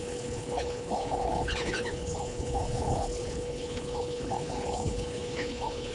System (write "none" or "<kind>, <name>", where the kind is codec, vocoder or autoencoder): codec, HILCodec